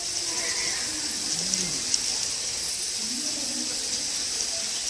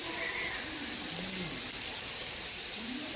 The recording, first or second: first